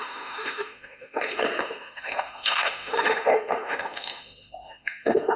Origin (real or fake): fake